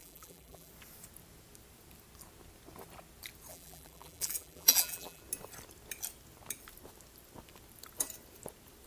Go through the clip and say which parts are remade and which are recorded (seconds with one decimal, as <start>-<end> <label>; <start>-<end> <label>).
0.0-0.7 remade; 0.7-3.5 recorded; 3.5-5.2 remade; 5.2-8.9 recorded